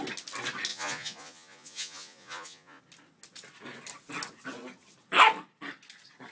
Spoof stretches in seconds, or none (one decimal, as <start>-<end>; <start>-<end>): 0.7-2.8